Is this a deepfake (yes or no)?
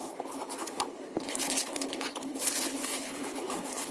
yes